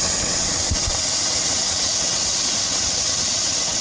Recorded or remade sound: remade